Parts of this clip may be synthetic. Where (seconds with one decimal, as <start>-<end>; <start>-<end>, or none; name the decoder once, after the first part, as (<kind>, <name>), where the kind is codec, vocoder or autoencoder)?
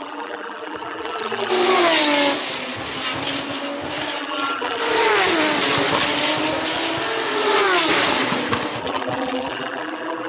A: 0.0-1.5 (vocoder, BigVGAN v2); 4.2-4.8; 8.8-10.3